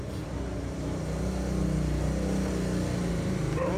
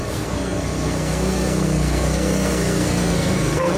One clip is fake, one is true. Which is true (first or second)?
first